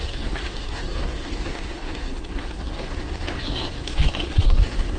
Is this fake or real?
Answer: fake